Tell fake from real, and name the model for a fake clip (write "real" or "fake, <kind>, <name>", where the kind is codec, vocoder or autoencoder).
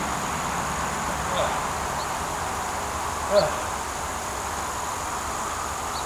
real